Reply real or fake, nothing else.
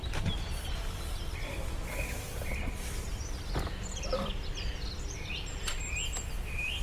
fake